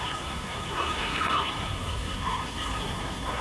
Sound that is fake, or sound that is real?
fake